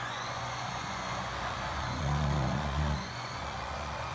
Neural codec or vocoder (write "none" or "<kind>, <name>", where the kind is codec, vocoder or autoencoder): vocoder, Vocos